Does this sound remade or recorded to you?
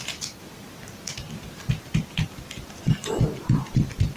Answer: recorded